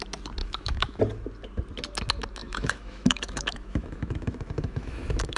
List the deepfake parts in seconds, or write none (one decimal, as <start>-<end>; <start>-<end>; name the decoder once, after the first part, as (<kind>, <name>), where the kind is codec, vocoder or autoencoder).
0.4-1.0 (autoencoder, DAC-VAE); 2.4-5.4